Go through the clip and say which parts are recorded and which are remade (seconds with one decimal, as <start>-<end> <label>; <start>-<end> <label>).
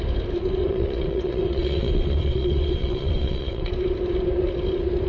0.0-0.6 recorded; 0.6-3.7 remade; 3.7-5.1 recorded